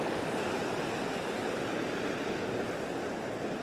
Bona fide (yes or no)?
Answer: yes